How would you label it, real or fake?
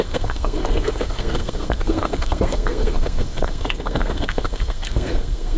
fake